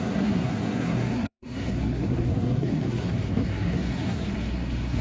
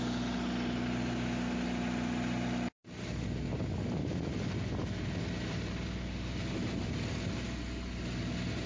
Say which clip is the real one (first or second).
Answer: second